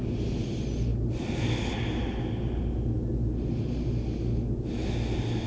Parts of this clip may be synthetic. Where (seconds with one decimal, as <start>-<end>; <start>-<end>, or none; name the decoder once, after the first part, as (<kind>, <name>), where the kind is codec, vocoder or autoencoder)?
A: none